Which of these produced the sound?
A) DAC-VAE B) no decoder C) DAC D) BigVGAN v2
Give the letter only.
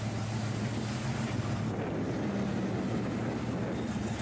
B